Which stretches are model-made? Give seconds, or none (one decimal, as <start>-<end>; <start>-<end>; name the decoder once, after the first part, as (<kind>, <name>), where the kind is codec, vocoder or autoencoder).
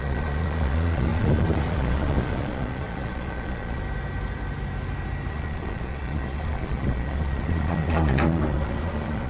0.0-3.8 (vocoder, Vocos); 5.3-9.3